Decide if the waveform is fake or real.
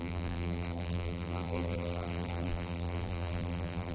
fake